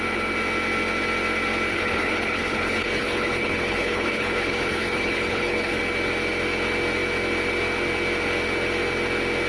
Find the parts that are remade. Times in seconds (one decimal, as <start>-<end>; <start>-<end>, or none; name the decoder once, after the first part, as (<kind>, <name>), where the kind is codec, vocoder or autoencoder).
1.7-5.8 (codec, HILCodec)

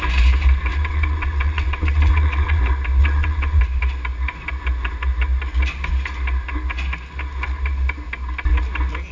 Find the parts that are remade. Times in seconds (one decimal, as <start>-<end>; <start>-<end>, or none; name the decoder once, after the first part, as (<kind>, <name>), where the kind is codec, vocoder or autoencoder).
0.7-2.6 (vocoder, WaveNeXt); 3.0-3.6